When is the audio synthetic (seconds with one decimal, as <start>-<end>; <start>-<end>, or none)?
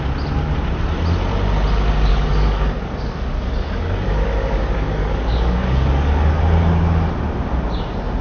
2.1-6.4